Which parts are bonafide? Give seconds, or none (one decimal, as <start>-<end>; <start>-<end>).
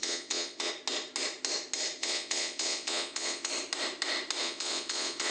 0.7-2.0; 3.5-4.4